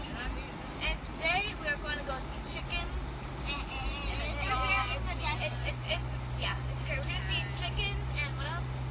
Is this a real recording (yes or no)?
yes